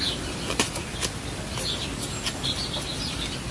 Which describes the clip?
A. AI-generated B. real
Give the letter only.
B